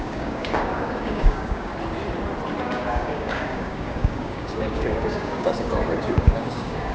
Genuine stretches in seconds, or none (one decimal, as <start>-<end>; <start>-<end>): 1.7-2.6